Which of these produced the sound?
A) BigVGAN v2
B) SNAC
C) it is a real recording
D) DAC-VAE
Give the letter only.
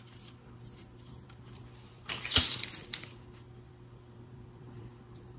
A